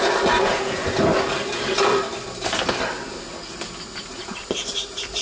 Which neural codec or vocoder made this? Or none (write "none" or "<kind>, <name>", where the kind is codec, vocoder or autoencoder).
none